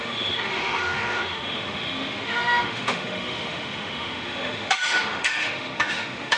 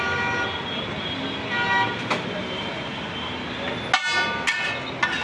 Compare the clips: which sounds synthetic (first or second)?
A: first